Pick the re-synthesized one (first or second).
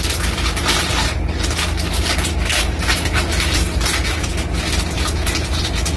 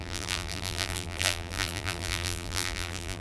second